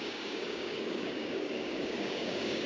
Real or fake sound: fake